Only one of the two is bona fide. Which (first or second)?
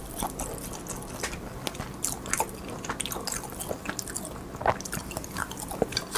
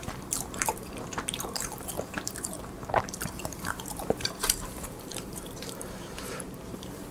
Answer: first